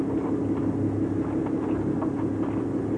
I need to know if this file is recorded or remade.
recorded